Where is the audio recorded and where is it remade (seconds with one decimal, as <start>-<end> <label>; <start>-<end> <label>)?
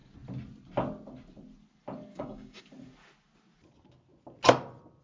0.0-2.1 recorded; 2.1-2.6 remade; 2.6-5.0 recorded